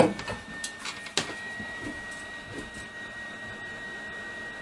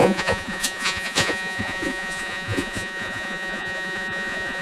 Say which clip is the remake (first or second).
second